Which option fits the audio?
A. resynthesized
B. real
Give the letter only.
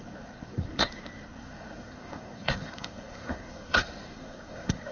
A